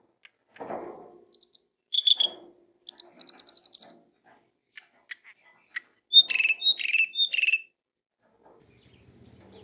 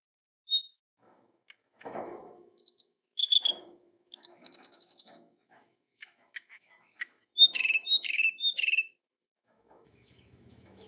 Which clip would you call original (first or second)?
first